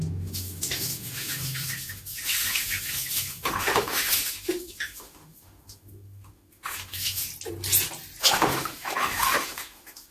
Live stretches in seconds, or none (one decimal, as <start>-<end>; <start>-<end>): 7.3-8.2